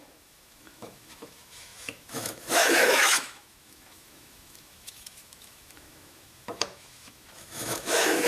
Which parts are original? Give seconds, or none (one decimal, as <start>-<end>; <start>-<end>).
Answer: none